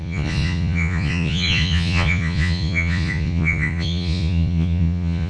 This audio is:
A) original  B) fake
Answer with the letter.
B